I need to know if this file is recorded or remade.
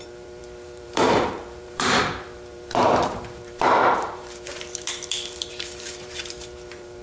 remade